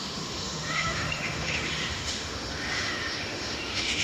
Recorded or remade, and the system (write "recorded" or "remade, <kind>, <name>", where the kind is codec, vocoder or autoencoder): remade, autoencoder, DAC-VAE